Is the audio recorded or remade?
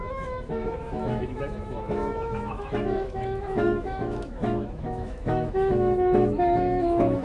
remade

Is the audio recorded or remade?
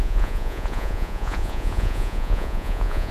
remade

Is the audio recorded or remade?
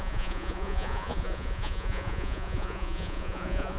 remade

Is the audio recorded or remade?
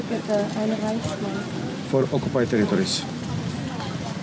recorded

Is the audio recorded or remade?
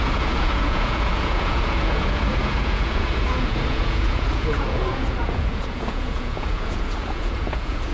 remade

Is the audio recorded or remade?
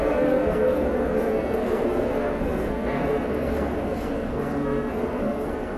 remade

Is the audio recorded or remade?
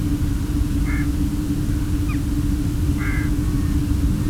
recorded